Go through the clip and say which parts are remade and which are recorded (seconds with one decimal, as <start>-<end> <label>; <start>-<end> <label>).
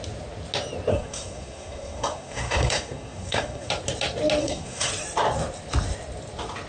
0.0-0.9 recorded; 0.9-3.7 remade; 3.7-4.4 recorded; 4.4-4.9 remade; 4.9-6.7 recorded